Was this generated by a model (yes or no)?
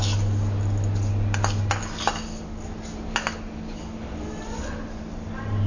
no